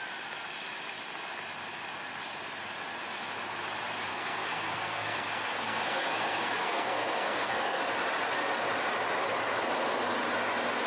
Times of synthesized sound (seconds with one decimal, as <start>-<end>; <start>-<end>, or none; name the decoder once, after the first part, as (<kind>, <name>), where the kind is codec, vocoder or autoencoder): 4.1-7.8 (codec, SNAC)